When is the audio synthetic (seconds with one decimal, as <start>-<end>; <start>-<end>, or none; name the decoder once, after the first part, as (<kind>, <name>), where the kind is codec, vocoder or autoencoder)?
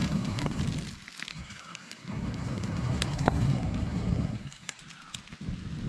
0.0-0.6 (codec, SNAC); 1.3-4.8